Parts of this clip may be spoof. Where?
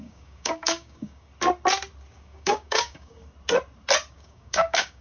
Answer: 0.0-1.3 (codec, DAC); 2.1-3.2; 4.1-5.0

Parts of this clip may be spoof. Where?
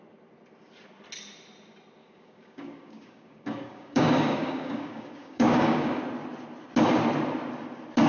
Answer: 2.0-6.0 (codec, DAC)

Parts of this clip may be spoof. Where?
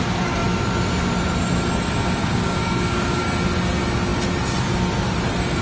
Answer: 2.2-3.2 (codec, DAC)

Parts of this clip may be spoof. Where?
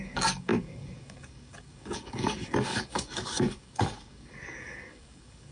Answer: 0.0-5.5 (codec, DAC)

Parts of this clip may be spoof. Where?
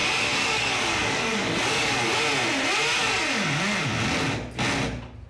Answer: 0.0-2.2 (codec, DAC); 3.0-3.5